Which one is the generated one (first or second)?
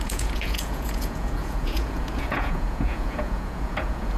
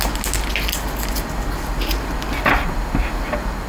first